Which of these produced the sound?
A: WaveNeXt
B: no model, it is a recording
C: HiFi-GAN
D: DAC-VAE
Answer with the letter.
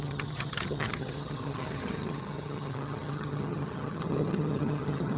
C